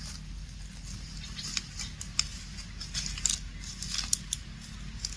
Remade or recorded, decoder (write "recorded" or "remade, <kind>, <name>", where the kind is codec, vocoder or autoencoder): recorded